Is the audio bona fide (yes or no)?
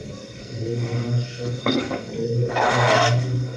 no